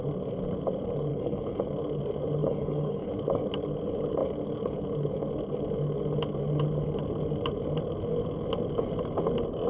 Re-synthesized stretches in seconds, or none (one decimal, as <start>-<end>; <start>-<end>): 1.1-1.6; 2.4-3.1